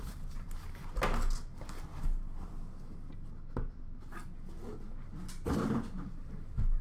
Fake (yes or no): no